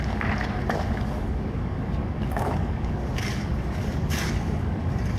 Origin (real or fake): fake